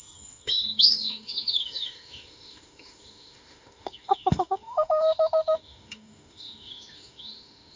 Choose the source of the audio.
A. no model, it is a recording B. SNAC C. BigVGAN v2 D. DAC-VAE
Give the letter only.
D